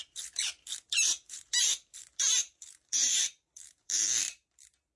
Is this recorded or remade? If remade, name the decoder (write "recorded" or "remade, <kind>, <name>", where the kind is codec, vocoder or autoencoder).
remade, vocoder, BigVGAN v2